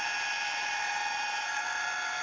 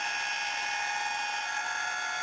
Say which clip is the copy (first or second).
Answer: first